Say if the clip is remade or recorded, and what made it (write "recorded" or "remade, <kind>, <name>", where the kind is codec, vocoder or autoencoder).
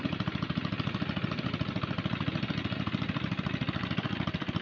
recorded